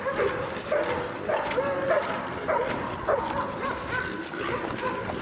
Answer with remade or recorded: recorded